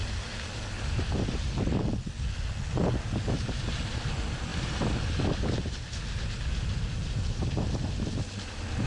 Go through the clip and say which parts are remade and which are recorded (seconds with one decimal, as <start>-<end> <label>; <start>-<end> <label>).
0.0-8.9 recorded